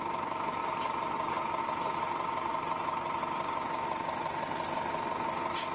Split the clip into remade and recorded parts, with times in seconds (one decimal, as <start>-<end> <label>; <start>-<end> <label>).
0.0-5.7 remade